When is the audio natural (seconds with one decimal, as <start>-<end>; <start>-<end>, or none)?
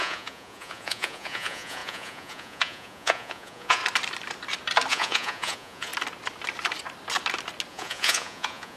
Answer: 3.8-4.9; 5.9-7.7